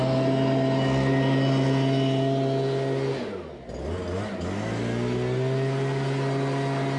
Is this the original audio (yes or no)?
yes